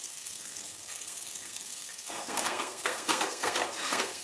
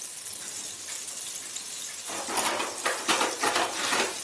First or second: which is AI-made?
first